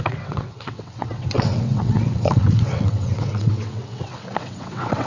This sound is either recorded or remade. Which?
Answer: remade